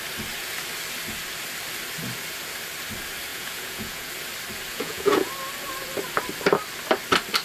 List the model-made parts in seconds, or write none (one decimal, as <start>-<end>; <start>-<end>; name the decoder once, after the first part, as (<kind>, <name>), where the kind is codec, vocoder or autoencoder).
3.3-4.1 (vocoder, Vocos); 4.7-5.3

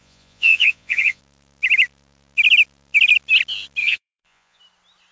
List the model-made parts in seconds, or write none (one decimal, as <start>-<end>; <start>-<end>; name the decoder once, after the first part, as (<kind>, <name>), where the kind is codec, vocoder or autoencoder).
0.0-1.2 (vocoder, Vocos); 3.8-4.6

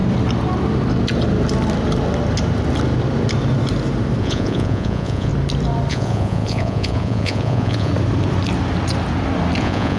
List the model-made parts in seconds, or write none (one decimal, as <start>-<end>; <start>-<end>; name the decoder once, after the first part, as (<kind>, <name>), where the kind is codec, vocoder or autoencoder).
4.2-5.3 (vocoder, Vocos); 5.9-7.9; 9.6-10.0

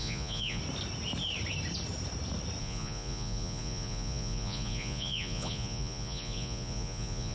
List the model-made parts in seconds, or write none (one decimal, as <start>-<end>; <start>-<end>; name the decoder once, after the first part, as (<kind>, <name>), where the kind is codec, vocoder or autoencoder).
0.0-0.6 (vocoder, Vocos); 2.6-7.3

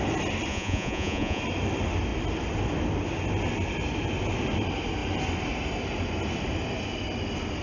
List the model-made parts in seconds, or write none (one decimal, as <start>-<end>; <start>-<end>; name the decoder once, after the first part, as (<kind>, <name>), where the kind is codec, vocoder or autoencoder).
0.5-1.4 (vocoder, Vocos)

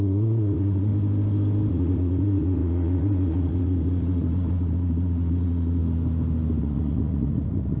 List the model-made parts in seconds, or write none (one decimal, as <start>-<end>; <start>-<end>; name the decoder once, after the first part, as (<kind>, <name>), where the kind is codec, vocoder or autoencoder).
0.0-0.9 (vocoder, Vocos); 1.7-5.8; 6.6-7.8

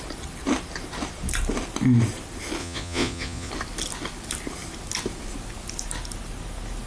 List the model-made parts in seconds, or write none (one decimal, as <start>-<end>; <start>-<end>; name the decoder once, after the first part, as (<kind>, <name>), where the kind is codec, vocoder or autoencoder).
2.6-3.5 (vocoder, Vocos)